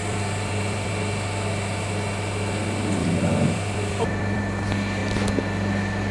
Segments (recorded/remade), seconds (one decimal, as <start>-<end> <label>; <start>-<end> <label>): 0.0-0.9 remade; 0.9-3.0 recorded; 3.0-4.4 remade; 4.4-6.1 recorded